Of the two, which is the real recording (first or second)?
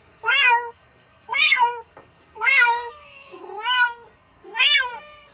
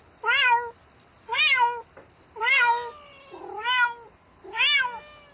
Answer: second